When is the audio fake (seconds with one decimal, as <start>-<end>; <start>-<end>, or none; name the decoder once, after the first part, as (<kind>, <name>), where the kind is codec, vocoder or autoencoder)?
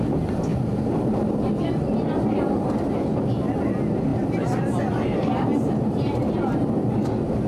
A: 0.5-1.2 (vocoder, BigVGAN v2); 4.1-4.8; 5.5-6.8